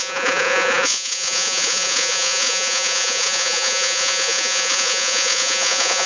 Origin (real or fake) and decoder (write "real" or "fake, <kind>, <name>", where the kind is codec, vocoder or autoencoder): fake, vocoder, Vocos